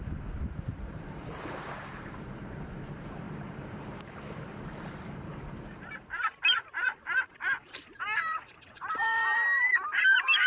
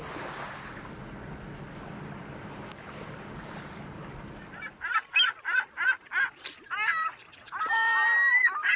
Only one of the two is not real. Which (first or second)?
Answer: first